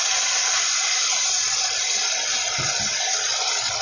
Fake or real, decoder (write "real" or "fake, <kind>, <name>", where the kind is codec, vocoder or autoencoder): real